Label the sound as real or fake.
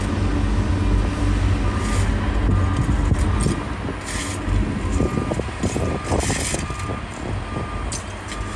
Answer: real